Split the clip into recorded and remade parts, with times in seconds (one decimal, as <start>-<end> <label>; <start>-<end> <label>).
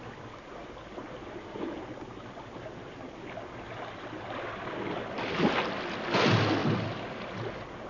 0.0-7.9 recorded